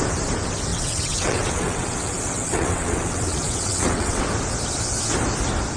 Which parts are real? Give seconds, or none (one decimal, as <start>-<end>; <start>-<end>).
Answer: 0.0-0.7; 4.2-5.8